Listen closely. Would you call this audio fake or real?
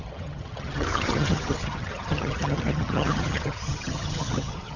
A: fake